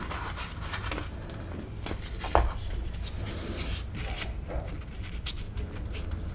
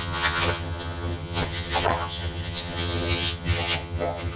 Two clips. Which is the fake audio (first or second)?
second